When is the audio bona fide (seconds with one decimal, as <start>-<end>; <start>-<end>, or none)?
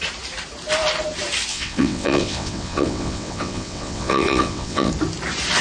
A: 0.0-1.5; 4.9-5.6